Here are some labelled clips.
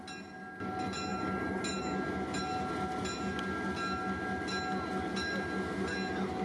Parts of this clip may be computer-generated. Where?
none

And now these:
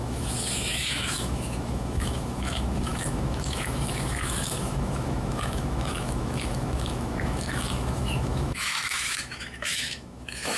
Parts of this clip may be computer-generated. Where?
0.0-10.6 (autoencoder, DAC-VAE)

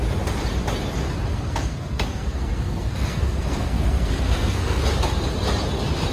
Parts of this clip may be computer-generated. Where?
1.3-4.8 (codec, SNAC)

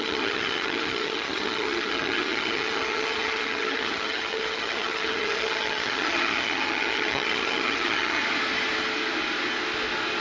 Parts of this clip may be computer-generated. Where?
0.0-8.2 (vocoder, HiFi-GAN)

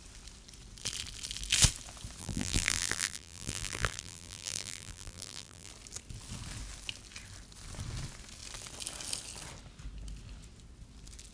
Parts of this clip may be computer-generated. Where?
2.2-5.7 (vocoder, BigVGAN v2)

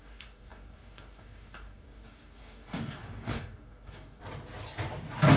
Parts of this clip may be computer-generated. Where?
0.0-4.2 (codec, DAC)

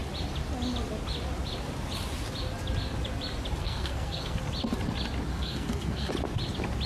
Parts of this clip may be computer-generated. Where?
3.6-4.4 (codec, SNAC); 5.3-6.1

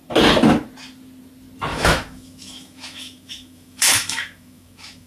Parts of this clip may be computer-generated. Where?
1.7-5.1 (autoencoder, DAC-VAE)